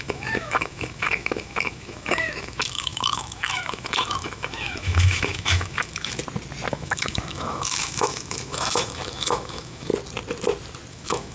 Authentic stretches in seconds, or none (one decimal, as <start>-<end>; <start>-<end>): 6.2-6.7; 9.9-10.9